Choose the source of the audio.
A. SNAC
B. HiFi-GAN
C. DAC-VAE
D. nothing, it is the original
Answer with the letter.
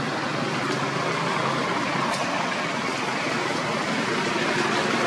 D